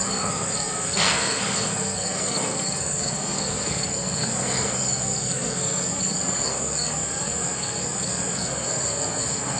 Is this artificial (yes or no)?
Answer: yes